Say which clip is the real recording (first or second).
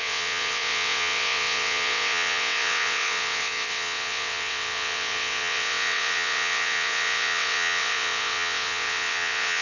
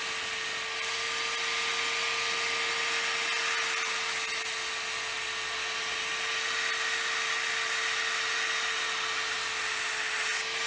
second